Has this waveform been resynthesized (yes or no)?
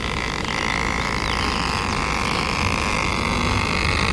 no